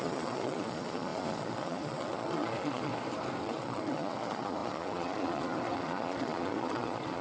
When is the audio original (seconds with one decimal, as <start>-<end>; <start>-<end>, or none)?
2.9-3.4